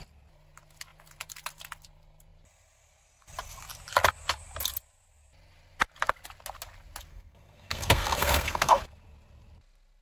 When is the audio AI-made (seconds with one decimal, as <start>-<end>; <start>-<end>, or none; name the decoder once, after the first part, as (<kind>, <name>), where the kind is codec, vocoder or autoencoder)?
7.1-8.8 (codec, SNAC)